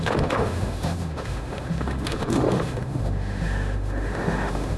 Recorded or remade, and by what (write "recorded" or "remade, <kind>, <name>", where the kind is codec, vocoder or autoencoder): remade, autoencoder, DAC-VAE